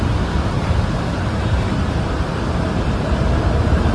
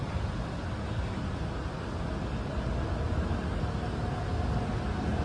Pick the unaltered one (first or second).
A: second